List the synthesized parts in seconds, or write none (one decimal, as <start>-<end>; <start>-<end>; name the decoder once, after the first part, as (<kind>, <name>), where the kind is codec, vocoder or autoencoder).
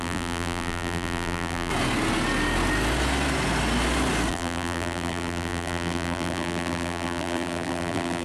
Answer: 0.0-1.7 (vocoder, BigVGAN v2); 4.3-8.2